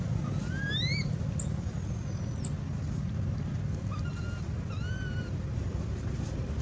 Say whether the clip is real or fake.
real